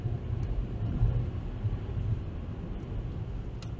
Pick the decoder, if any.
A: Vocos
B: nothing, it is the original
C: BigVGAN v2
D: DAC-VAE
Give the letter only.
B